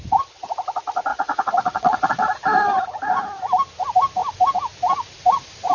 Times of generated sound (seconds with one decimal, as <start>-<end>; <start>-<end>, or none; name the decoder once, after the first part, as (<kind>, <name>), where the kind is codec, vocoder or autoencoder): 1.1-2.2 (vocoder, WaveNeXt)